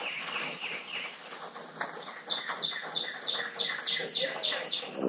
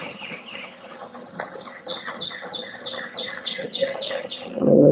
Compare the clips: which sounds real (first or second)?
first